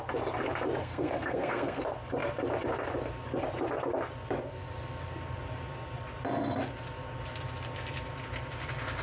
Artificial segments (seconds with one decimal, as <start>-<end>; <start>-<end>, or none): 0.8-1.8